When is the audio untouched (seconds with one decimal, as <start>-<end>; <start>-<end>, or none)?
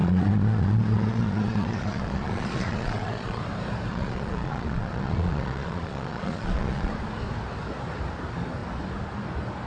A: 3.4-3.9; 6.9-9.7